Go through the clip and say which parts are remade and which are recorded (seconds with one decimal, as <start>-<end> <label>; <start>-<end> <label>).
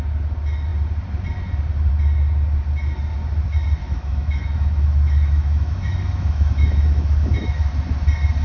0.0-3.8 recorded; 3.8-7.7 remade; 7.7-8.4 recorded